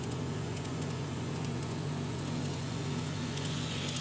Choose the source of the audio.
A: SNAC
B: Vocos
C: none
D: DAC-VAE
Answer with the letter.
B